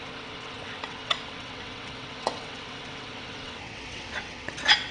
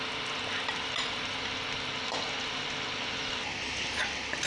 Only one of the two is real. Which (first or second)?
second